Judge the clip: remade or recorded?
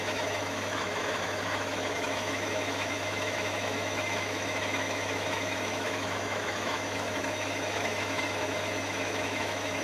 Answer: remade